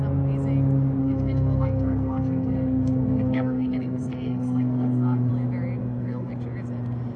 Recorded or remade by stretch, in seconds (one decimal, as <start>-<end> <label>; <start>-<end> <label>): 0.0-1.0 recorded; 1.0-5.3 remade; 5.3-5.8 recorded; 5.8-6.3 remade; 6.3-7.2 recorded

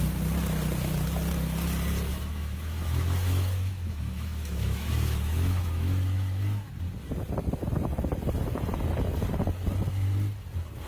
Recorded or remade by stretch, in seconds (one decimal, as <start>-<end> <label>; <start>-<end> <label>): 0.0-2.1 recorded; 2.1-6.7 remade; 6.7-10.9 recorded

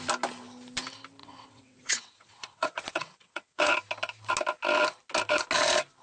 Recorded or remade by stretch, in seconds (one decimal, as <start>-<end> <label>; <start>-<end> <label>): 0.0-1.2 recorded; 1.2-3.7 remade; 3.7-6.0 recorded

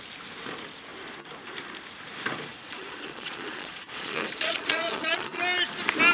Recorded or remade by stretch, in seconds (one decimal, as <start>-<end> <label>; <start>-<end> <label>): 0.0-2.5 recorded; 2.5-5.4 remade; 5.4-6.1 recorded